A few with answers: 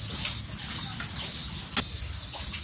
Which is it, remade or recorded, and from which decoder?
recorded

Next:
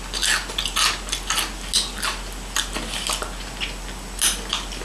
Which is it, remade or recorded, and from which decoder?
recorded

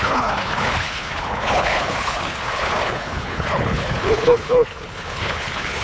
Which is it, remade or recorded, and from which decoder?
remade, codec, HILCodec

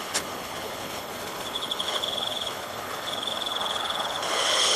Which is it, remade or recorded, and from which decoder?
remade, codec, HILCodec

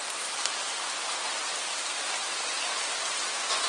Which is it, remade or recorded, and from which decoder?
recorded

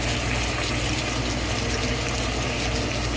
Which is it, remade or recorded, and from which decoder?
recorded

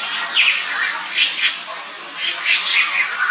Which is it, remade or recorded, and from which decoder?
recorded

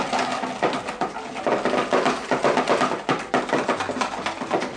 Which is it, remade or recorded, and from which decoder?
recorded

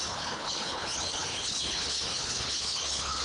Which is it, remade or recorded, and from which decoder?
remade, codec, HILCodec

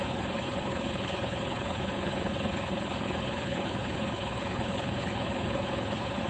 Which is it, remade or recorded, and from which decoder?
remade, codec, HILCodec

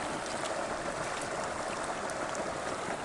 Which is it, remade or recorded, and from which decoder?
recorded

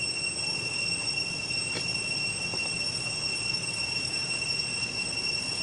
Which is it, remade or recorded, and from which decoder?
recorded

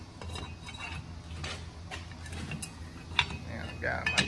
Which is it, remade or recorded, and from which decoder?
recorded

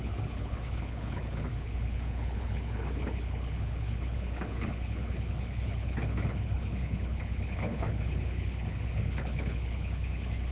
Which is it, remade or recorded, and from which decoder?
remade, codec, HILCodec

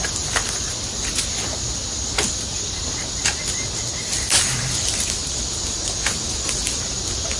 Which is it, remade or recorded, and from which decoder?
recorded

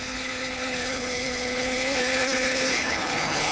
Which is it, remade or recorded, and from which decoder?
remade, codec, HILCodec